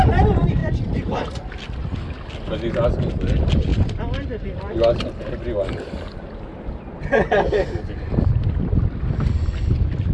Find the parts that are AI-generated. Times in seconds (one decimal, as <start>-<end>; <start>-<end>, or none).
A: 0.6-1.3